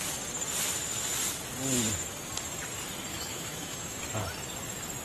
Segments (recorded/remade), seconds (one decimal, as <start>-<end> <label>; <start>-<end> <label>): 0.0-3.1 recorded; 3.1-4.0 remade; 4.0-5.0 recorded